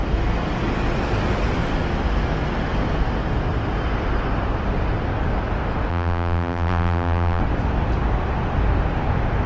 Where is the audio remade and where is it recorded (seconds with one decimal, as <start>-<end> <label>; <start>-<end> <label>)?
0.0-5.9 recorded; 5.9-7.4 remade; 7.4-9.5 recorded